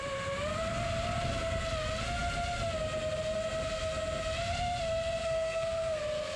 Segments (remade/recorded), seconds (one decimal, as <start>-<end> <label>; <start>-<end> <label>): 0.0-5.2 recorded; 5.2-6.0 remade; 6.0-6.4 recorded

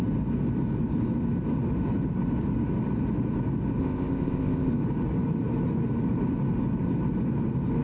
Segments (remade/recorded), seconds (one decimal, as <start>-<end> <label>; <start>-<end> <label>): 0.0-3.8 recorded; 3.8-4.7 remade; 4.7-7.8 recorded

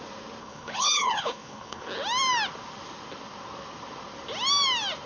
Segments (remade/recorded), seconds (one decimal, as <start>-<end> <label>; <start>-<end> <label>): 0.0-0.4 recorded; 0.4-1.9 remade; 1.9-5.1 recorded

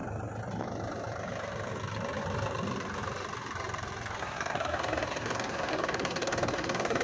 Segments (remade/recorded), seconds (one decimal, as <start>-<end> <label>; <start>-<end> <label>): 0.0-4.2 recorded; 4.2-7.0 remade

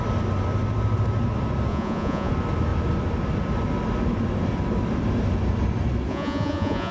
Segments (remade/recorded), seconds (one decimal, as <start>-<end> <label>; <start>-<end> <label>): 0.0-1.7 recorded; 1.7-2.3 remade; 2.3-6.1 recorded; 6.1-6.9 remade

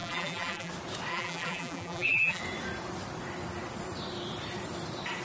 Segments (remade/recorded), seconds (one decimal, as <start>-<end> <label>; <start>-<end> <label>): 0.0-0.7 remade; 0.7-1.1 recorded; 1.1-2.4 remade; 2.4-5.2 recorded